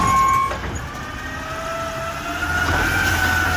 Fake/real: real